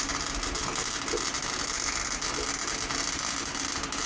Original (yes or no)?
yes